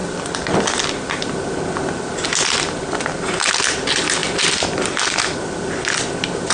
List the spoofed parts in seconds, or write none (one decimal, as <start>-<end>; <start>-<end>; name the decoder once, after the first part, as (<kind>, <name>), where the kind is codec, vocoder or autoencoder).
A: none